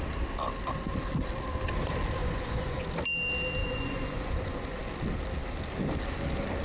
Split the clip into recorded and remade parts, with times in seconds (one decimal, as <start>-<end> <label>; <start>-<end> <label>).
0.0-2.2 recorded; 2.2-2.8 remade; 2.8-3.6 recorded; 3.6-4.8 remade; 4.8-6.6 recorded